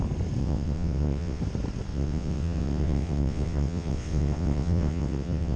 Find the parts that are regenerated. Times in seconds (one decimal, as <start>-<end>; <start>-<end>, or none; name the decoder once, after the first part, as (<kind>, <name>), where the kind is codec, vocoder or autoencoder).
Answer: 0.4-1.4 (vocoder, WaveNeXt); 1.9-5.6